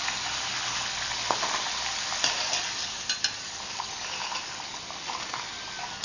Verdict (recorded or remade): recorded